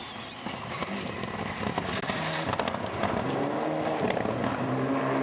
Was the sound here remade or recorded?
recorded